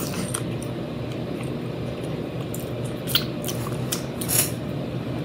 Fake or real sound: real